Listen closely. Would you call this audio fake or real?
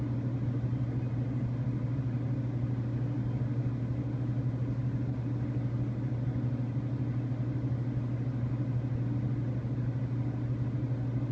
real